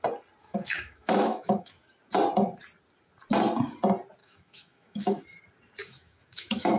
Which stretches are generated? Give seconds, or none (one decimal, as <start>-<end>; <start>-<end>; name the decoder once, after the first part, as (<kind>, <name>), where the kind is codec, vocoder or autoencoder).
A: 0.4-1.9 (autoencoder, DAC-VAE); 4.2-5.2; 5.8-6.8